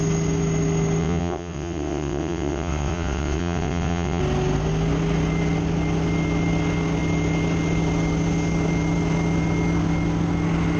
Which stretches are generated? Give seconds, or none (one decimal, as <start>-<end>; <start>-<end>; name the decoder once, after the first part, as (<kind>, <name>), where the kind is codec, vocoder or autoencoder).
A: 1.0-4.2 (vocoder, WaveNeXt)